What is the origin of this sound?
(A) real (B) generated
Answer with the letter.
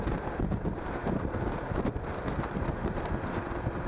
B